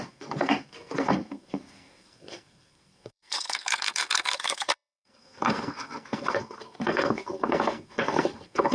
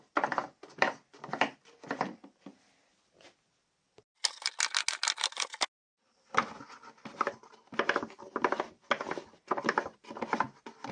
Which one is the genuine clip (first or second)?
second